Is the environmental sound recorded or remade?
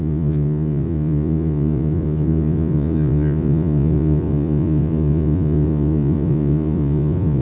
remade